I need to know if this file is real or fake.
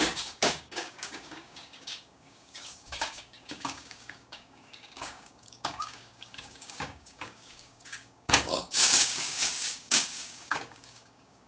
fake